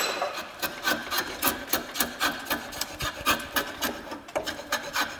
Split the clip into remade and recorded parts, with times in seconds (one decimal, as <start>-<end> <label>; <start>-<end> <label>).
0.0-1.0 remade; 1.0-2.5 recorded; 2.5-5.2 remade